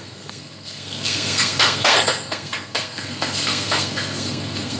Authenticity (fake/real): fake